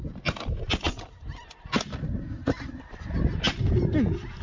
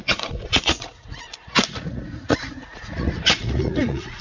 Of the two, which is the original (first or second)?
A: first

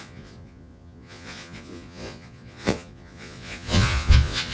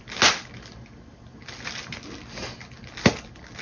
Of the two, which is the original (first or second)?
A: second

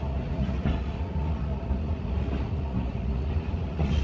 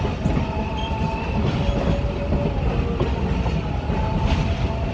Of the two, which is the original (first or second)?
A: second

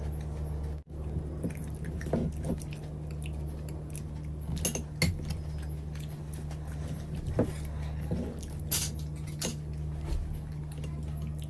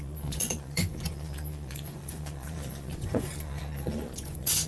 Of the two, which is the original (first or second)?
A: first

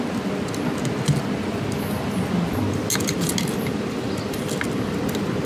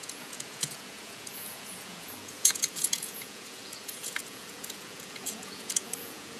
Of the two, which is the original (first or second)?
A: first